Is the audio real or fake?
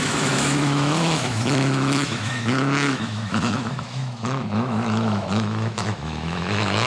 fake